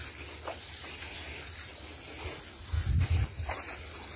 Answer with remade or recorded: recorded